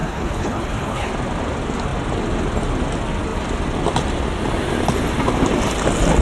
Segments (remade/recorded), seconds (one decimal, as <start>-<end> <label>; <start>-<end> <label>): 0.0-1.1 remade; 1.1-6.2 recorded